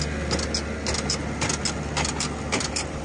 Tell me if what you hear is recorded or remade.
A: recorded